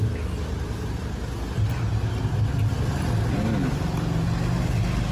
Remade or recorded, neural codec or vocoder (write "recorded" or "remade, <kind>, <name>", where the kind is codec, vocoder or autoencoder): recorded